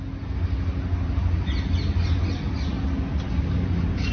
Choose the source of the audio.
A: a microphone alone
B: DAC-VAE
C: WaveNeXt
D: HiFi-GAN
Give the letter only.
A